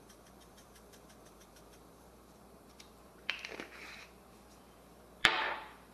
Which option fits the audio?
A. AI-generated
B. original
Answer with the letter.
A